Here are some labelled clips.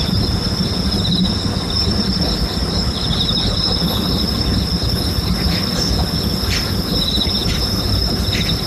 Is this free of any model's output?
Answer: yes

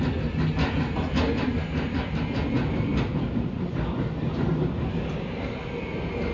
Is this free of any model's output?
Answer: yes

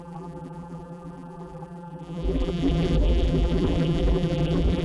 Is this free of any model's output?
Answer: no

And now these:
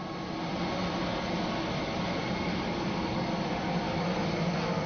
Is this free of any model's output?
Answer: yes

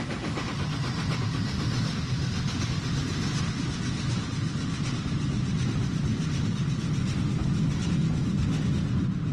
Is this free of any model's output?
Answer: yes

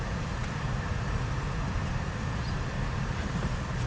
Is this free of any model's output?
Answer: no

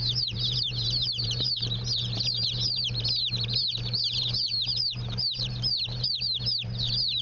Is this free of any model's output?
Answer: no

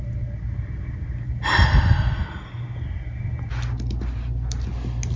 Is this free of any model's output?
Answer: yes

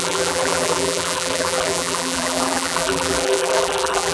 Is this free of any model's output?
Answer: no